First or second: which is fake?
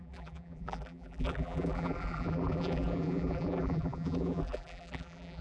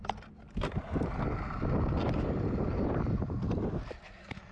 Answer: first